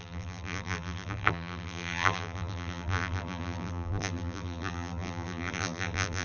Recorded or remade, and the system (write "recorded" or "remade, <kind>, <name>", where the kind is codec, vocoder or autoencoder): remade, vocoder, BigVGAN v2